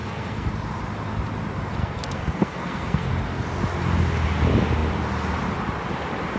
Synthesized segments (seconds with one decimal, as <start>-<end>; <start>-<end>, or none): 0.0-0.5; 1.8-3.1